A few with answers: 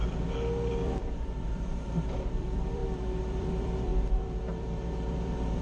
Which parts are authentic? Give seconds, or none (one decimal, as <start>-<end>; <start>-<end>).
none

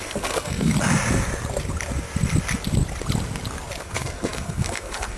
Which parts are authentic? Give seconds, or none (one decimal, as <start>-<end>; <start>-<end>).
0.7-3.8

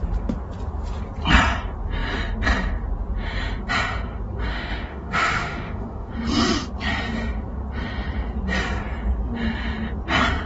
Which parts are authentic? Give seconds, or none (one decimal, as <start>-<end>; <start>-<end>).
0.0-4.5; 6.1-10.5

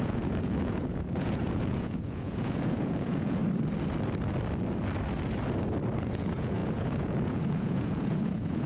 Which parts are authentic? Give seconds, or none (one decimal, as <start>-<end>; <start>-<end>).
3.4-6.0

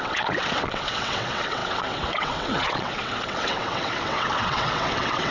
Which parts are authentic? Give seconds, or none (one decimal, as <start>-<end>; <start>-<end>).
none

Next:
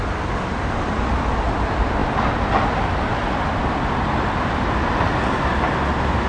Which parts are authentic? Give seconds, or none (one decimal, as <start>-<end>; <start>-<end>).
0.0-6.3